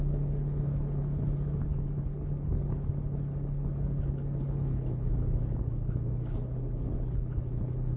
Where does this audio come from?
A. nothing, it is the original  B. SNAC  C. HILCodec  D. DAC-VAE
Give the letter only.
C